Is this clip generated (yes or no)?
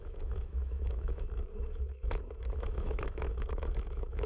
yes